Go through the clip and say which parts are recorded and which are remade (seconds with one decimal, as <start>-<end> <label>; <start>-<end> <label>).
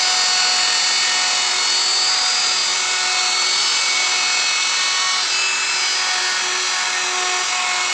0.0-7.9 recorded